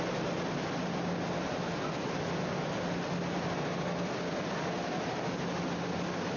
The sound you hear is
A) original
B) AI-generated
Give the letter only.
A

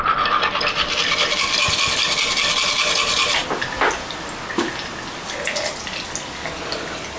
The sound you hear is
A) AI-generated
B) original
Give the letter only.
B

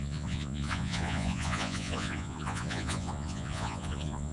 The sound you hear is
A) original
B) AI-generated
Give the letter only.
B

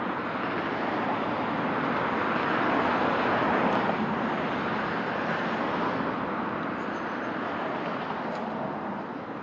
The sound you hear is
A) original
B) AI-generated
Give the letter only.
A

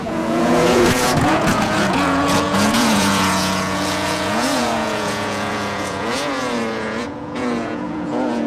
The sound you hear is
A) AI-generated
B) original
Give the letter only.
A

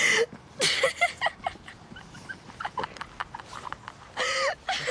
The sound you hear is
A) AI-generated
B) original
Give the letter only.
B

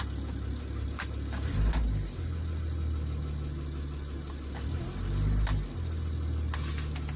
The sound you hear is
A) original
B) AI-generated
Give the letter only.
A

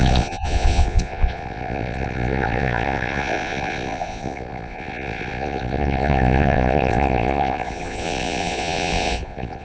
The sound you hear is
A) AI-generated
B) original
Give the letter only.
A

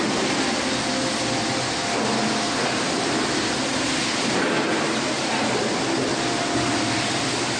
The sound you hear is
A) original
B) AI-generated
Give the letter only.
A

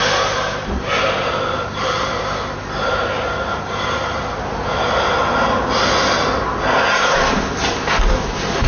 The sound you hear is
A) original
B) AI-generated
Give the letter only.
A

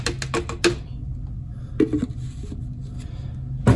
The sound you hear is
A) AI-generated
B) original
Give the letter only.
B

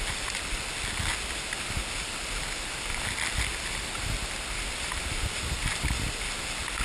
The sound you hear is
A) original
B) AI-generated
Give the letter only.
A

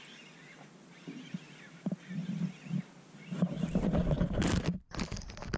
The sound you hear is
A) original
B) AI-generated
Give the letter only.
A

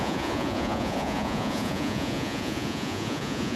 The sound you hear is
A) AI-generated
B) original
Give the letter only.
A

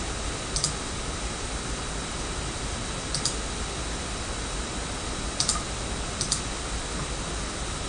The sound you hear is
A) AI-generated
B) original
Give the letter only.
B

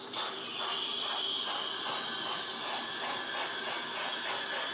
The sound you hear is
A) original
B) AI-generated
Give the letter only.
A